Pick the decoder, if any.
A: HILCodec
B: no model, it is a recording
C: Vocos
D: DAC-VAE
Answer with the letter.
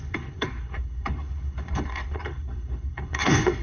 A